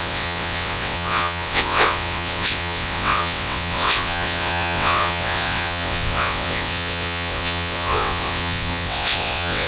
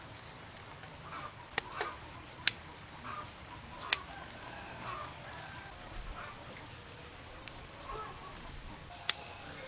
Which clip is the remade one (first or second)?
first